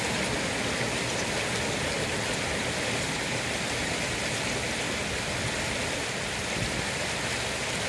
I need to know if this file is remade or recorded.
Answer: recorded